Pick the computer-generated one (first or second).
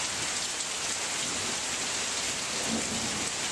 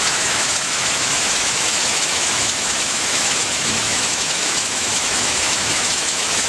second